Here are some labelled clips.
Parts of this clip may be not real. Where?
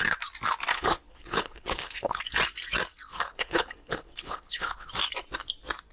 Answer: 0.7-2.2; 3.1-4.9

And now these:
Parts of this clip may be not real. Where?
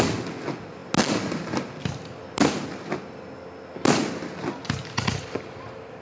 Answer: none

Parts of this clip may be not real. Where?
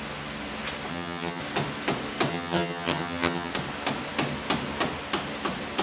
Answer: 0.9-1.4; 2.3-3.5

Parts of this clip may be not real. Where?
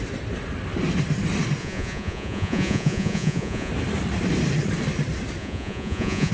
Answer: 1.6-3.7; 5.4-6.3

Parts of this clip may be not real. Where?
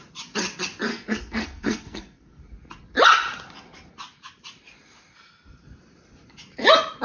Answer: 0.9-2.4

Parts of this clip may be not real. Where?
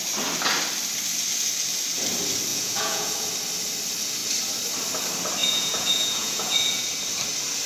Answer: 2.5-3.1; 5.4-6.8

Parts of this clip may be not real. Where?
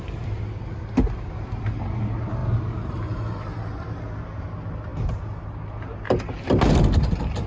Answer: none